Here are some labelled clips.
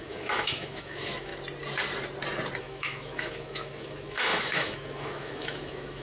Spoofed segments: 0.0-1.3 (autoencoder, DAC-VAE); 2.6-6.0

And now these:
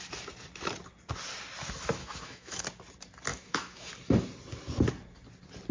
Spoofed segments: 2.0-2.6 (autoencoder, DAC-VAE); 3.3-3.9

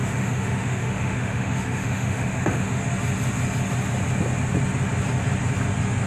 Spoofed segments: 0.0-2.8 (autoencoder, DAC-VAE)

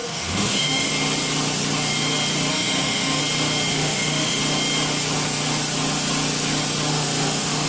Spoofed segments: 0.0-0.9 (autoencoder, DAC-VAE); 2.5-3.2; 3.7-4.4; 6.9-7.7

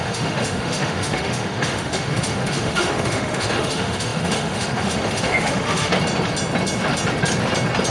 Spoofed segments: 0.0-5.9 (autoencoder, DAC-VAE)